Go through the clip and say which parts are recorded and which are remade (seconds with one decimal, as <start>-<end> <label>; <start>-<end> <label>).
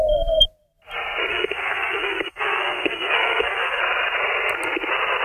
0.0-1.3 recorded; 1.3-3.8 remade; 3.8-5.2 recorded